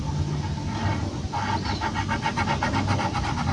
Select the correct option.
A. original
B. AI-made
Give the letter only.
A